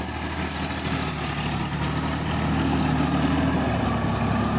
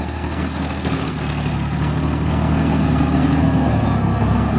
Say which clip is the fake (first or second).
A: second